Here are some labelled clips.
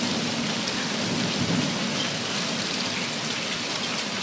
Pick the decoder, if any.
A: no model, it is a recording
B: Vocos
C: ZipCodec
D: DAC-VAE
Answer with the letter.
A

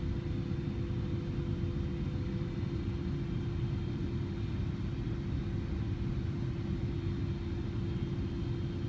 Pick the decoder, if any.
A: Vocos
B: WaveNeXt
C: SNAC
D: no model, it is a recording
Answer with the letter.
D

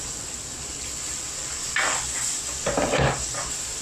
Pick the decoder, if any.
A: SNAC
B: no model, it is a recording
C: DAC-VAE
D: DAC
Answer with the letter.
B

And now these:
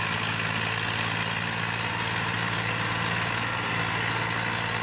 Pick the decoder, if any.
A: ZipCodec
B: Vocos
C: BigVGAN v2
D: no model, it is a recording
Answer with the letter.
D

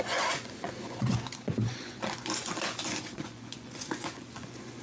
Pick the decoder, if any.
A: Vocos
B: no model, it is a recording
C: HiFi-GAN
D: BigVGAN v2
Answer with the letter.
A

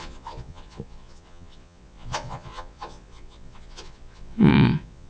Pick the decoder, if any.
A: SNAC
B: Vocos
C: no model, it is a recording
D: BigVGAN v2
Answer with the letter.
B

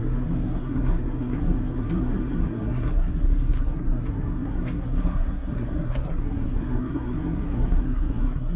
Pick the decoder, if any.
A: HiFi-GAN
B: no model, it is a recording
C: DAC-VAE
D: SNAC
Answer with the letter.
D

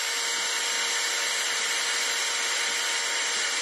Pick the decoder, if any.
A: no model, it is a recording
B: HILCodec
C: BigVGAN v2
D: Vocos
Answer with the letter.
A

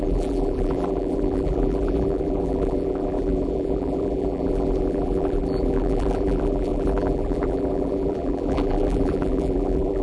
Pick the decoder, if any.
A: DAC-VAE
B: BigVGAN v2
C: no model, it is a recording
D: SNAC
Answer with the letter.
B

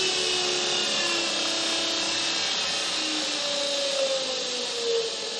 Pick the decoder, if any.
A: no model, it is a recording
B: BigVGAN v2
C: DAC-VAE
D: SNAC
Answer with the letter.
A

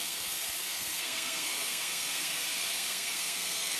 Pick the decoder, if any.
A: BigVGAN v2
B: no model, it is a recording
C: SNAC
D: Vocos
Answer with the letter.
C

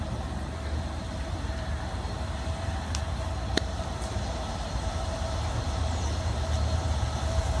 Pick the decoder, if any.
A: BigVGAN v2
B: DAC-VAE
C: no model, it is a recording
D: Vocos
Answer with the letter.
A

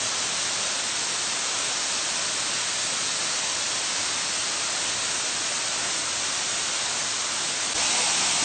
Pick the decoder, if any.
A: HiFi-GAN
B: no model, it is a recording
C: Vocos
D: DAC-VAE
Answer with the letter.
B